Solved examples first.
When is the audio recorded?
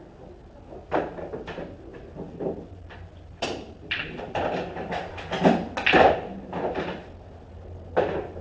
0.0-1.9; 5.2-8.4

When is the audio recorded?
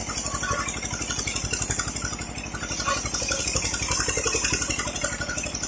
0.0-3.4